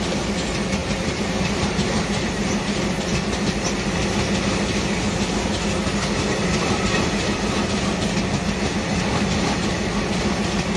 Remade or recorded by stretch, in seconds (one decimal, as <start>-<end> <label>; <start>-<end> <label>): 0.0-0.8 recorded; 0.8-3.1 remade; 3.1-10.8 recorded